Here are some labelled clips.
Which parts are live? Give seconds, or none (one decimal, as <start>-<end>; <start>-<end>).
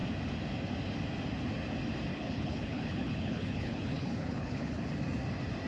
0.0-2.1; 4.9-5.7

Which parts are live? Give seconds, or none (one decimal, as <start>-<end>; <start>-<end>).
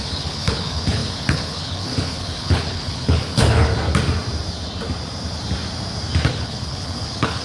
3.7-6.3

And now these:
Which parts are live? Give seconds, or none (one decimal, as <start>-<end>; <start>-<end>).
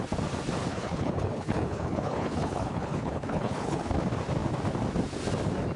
0.0-0.7; 3.9-5.8